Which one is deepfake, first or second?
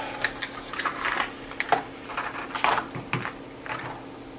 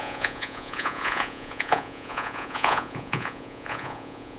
second